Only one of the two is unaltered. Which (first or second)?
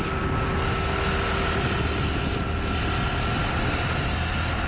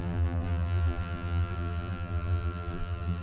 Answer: first